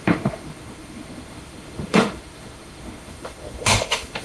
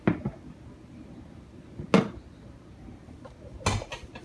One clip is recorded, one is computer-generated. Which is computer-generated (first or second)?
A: first